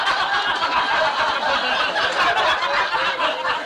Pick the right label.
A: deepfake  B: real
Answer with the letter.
B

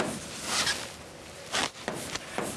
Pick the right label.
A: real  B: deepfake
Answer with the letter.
A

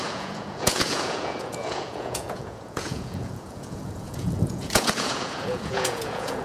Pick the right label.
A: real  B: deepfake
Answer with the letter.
B